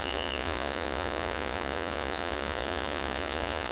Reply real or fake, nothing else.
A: fake